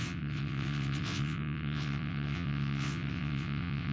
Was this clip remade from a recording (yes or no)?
yes